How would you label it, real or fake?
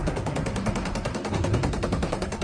fake